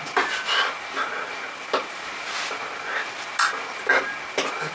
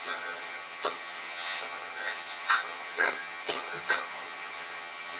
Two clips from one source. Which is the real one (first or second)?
first